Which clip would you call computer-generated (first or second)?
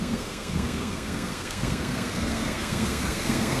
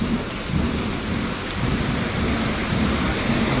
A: first